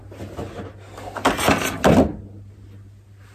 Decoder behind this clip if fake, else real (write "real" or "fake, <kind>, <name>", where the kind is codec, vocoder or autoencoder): real